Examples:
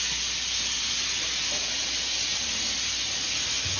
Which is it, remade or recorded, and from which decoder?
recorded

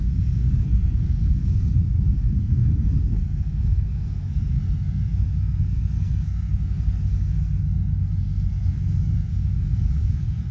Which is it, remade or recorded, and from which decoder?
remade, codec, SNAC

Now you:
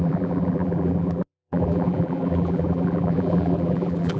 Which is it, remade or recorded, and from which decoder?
remade, vocoder, BigVGAN v2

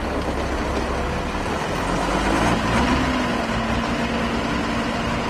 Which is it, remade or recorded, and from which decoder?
recorded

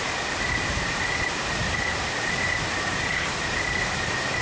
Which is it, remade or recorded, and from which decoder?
remade, vocoder, BigVGAN v2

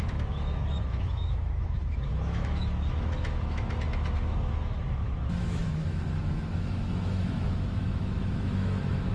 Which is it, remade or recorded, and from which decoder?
remade, autoencoder, DAC-VAE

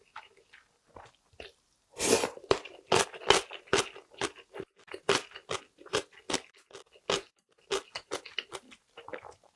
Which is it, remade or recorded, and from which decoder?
recorded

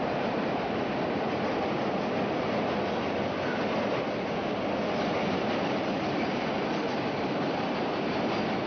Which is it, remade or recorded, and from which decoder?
recorded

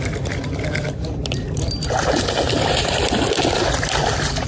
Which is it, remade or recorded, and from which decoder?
recorded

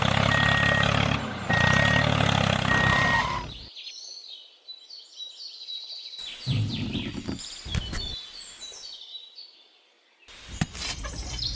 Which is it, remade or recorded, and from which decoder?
recorded